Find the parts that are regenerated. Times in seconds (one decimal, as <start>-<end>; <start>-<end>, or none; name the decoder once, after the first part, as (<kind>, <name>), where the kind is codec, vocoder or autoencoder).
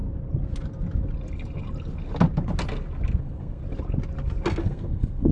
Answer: 3.2-3.6 (codec, SNAC); 4.6-5.3